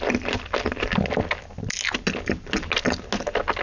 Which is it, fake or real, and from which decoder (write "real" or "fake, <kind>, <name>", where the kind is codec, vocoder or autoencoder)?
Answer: real